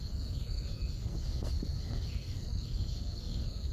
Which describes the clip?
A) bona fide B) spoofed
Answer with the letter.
B